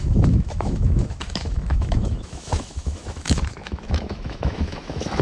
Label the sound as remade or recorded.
remade